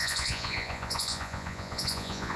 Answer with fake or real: fake